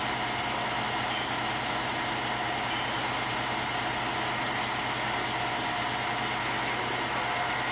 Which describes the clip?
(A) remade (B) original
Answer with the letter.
B